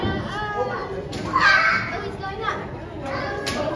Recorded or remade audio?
recorded